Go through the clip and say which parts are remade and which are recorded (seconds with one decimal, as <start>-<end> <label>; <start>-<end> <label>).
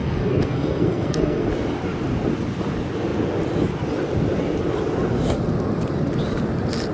0.0-1.5 remade; 1.5-6.9 recorded